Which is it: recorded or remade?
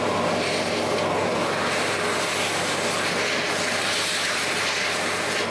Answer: recorded